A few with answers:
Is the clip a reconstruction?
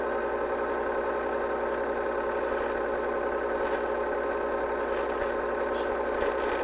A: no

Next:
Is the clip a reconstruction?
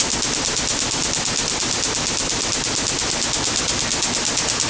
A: no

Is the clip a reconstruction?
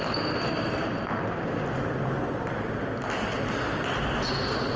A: no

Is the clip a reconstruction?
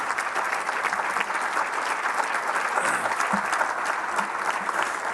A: no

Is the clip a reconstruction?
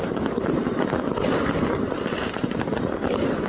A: yes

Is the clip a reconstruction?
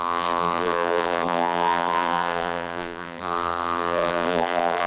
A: yes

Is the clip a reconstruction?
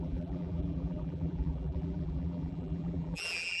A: yes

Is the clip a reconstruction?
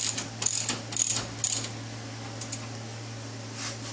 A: no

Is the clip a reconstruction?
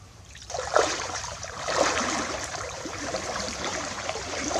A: yes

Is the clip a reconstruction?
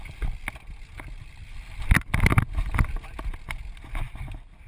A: no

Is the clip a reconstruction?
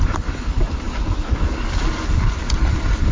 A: yes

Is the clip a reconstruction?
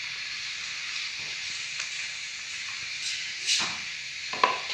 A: no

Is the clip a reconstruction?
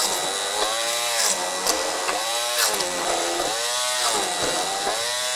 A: no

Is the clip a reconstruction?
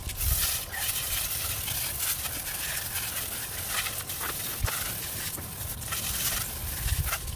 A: no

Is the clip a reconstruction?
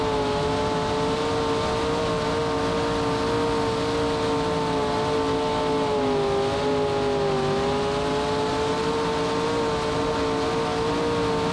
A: no